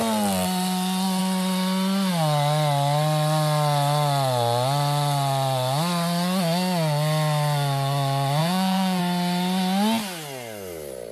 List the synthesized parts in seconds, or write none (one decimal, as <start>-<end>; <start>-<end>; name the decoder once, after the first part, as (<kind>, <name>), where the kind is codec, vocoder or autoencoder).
8.4-9.0 (vocoder, Vocos)